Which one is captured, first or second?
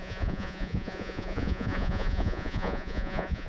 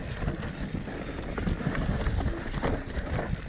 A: second